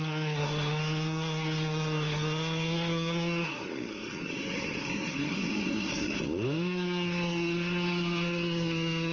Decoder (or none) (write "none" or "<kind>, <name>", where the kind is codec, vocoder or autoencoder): codec, SNAC